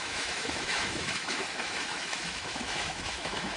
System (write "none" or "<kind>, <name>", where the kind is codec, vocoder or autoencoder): autoencoder, DAC-VAE